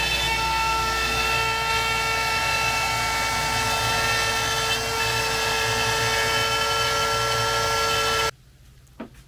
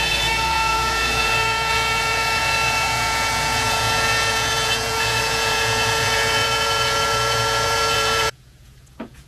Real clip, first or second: first